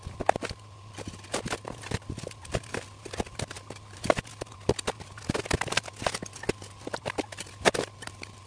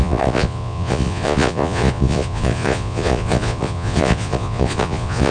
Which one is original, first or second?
first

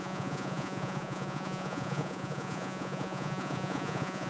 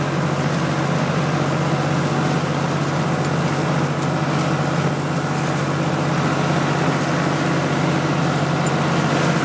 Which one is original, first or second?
second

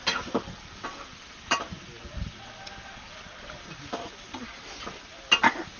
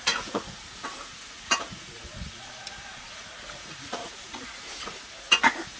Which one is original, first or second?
first